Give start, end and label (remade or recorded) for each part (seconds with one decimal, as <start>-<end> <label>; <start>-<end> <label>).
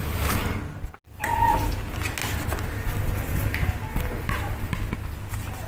0.0-5.7 recorded